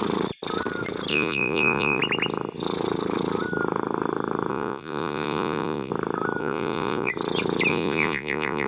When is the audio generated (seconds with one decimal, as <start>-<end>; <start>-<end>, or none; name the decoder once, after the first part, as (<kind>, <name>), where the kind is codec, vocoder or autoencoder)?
1.1-2.0 (vocoder, Vocos); 4.5-5.9; 6.4-7.1; 7.7-8.7